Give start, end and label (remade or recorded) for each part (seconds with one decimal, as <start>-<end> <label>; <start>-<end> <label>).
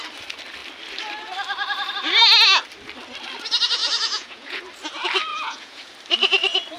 0.0-3.8 recorded; 3.8-4.6 remade; 4.6-5.3 recorded; 5.3-5.9 remade; 5.9-6.8 recorded